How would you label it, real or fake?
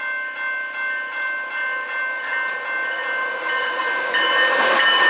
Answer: real